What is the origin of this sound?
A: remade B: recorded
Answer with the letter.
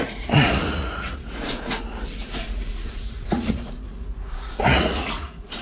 A